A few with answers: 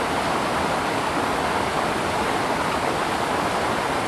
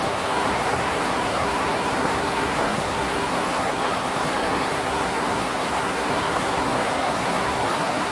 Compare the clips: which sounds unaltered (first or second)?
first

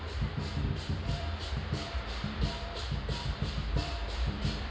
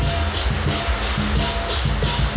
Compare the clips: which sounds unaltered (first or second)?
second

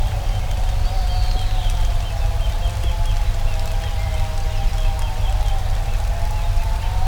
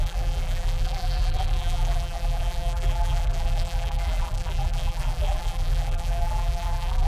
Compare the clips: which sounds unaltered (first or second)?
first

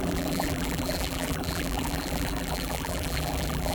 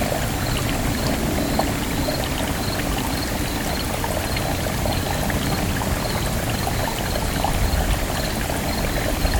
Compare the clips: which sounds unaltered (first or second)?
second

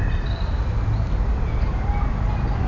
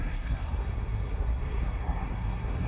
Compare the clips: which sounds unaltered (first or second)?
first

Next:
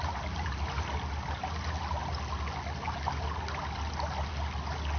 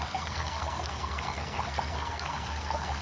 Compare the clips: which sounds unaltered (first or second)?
first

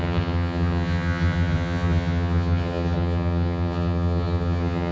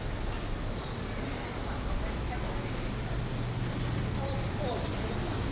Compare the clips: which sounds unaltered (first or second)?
second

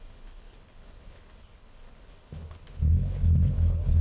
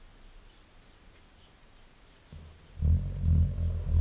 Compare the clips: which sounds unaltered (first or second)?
second